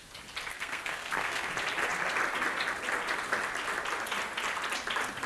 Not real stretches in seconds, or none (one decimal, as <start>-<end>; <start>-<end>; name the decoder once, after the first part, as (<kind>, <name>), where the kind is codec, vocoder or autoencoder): 0.5-1.5 (codec, SNAC)